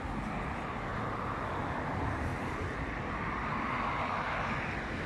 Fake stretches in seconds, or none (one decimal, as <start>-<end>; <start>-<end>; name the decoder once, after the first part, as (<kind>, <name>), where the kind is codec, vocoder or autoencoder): none